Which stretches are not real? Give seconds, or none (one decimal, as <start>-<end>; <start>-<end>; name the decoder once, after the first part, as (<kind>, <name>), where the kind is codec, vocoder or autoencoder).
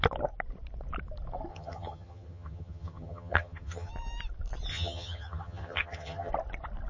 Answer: 1.5-3.9 (vocoder, HiFi-GAN); 4.7-6.3